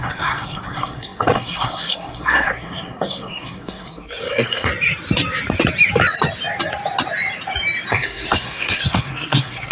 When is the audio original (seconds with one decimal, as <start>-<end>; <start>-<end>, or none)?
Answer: 4.7-7.9